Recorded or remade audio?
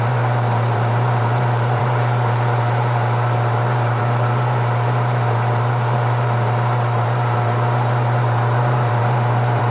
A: remade